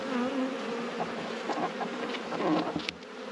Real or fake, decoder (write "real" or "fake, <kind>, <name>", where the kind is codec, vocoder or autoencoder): real